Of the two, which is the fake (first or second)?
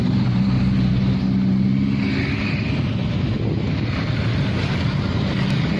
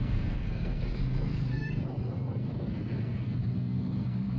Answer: second